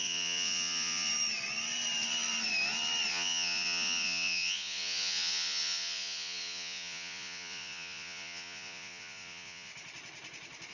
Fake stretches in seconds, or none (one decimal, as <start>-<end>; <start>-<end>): 0.0-1.1; 3.1-9.7